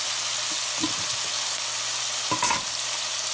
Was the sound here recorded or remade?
recorded